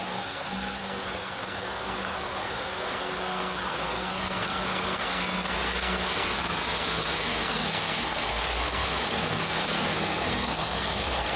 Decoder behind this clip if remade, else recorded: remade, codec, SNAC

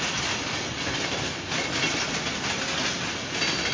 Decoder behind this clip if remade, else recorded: recorded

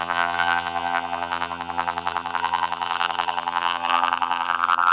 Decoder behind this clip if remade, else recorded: remade, vocoder, BigVGAN v2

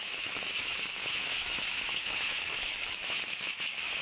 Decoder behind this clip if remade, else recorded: remade, autoencoder, DAC-VAE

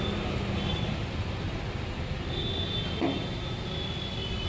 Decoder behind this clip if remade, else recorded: recorded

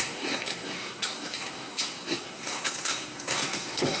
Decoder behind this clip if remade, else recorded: remade, codec, SNAC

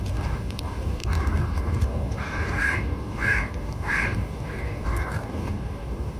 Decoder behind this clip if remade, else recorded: remade, codec, DAC